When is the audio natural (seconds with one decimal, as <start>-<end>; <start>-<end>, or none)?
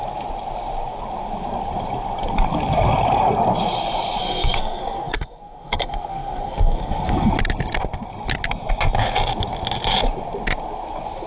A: 0.0-4.2; 7.3-11.3